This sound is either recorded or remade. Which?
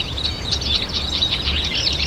remade